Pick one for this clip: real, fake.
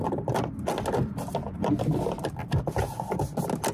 real